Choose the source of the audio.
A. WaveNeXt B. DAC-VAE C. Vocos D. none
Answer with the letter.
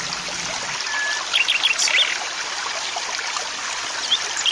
D